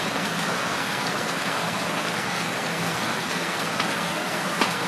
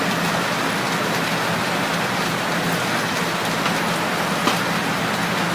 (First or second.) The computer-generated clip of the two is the first